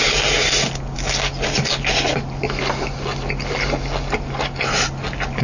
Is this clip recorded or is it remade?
recorded